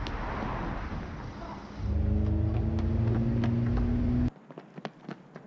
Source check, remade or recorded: recorded